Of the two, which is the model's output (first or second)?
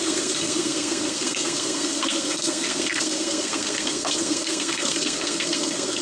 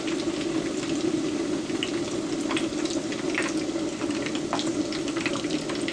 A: first